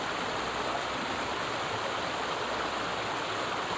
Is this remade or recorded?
recorded